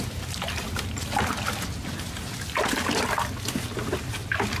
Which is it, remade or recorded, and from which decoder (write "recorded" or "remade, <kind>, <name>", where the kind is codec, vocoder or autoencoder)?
recorded